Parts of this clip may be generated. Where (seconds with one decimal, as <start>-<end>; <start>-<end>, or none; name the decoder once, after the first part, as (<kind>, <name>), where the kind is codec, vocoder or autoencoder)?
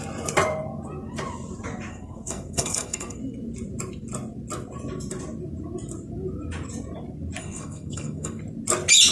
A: 1.9-3.2 (codec, SNAC); 7.4-8.4